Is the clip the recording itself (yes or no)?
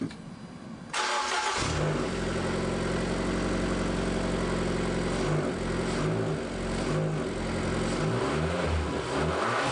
yes